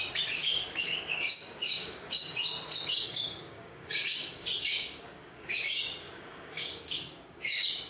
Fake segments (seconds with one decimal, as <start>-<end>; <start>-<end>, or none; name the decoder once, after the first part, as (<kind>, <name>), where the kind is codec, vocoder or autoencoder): 0.0-2.3 (codec, DAC); 2.9-7.9